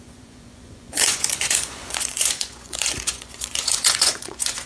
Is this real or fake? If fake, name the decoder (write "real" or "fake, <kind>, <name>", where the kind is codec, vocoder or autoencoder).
fake, vocoder, Vocos